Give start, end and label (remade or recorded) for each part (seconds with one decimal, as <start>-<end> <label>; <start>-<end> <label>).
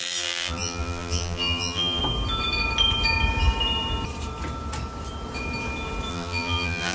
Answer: 0.0-2.0 remade; 2.0-6.1 recorded; 6.1-6.9 remade